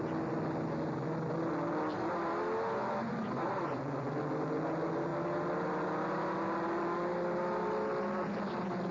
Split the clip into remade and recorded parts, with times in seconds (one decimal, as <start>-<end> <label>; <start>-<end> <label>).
0.0-2.8 recorded; 2.8-3.8 remade; 3.8-8.9 recorded